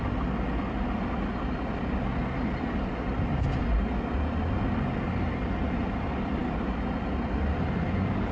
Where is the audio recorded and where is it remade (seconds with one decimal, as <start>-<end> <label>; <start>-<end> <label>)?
0.0-8.3 recorded